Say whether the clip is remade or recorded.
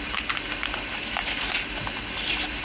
recorded